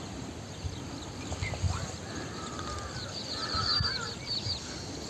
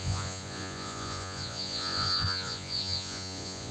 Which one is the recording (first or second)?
first